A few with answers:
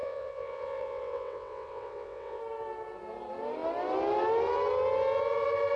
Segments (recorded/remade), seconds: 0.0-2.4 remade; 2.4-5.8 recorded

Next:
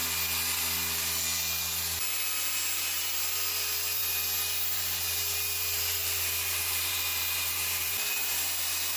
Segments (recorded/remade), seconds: 0.0-5.0 recorded; 5.0-9.0 remade

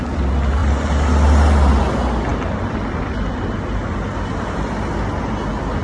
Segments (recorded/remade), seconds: 0.0-5.8 recorded

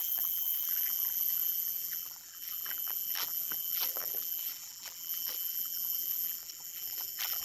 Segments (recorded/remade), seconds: 0.0-7.4 remade

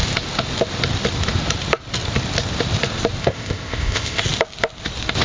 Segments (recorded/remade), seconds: 0.0-3.2 recorded; 3.2-4.2 remade; 4.2-5.2 recorded

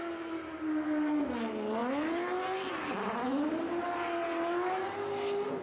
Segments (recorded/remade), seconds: 0.0-5.6 recorded